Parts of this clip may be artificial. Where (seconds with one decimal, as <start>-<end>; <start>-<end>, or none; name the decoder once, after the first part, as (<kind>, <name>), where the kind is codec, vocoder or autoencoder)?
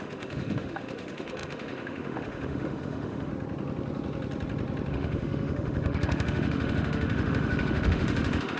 0.0-3.3 (autoencoder, DAC-VAE); 4.9-8.6